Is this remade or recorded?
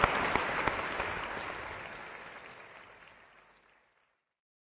recorded